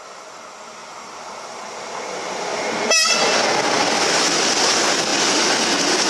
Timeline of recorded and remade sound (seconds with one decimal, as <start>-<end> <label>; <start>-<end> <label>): 0.0-6.1 recorded